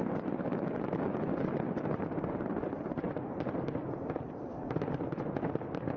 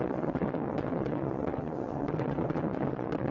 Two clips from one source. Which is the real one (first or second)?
first